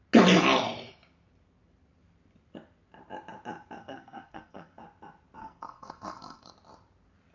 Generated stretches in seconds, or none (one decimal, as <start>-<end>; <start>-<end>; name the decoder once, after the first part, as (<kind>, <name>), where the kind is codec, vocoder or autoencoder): 3.8-4.8 (codec, SNAC); 5.4-6.5